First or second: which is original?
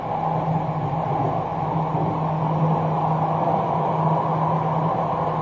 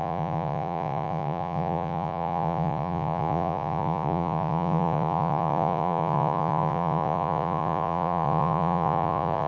first